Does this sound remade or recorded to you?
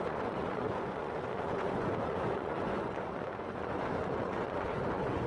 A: remade